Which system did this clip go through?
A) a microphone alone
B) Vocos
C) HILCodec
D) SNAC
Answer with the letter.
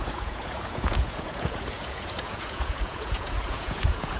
B